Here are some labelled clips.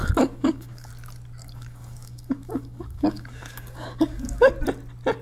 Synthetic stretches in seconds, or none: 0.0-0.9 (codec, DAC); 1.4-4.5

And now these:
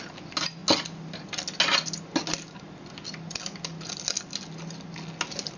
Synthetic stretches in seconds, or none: none

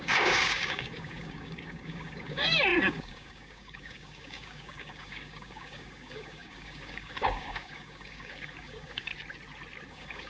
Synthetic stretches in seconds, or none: 0.0-9.1 (codec, DAC); 9.9-10.3

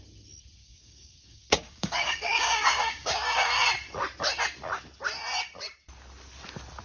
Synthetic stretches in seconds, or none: 0.6-3.5 (codec, DAC)

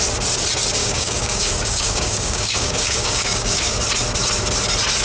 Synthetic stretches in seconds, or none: 0.8-3.8 (codec, DAC)

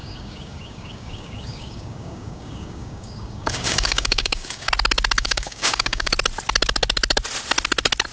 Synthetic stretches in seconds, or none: 0.0-4.7 (codec, DAC); 5.2-6.1

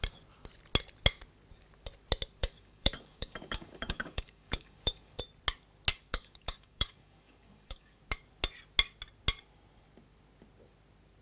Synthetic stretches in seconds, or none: 2.4-5.2 (codec, DAC); 5.9-8.0

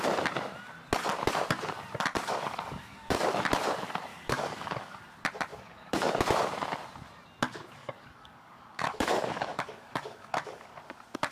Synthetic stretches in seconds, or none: 2.1-3.4 (codec, DAC); 4.1-5.0; 5.5-6.1; 7.8-10.8